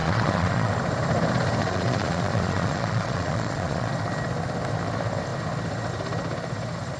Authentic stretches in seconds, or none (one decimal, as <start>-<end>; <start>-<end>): 0.7-1.6; 3.9-7.0